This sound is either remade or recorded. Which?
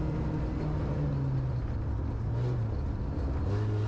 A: recorded